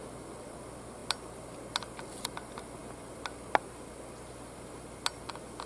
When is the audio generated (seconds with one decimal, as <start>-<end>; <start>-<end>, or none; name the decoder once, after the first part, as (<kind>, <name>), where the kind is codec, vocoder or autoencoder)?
none